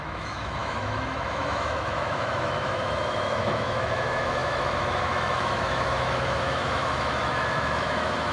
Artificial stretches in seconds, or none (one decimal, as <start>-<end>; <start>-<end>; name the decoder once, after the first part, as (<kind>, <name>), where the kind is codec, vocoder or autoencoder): 0.0-8.3 (autoencoder, DAC-VAE)